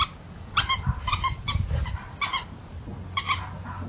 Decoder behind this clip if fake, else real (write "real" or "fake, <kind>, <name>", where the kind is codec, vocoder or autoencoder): real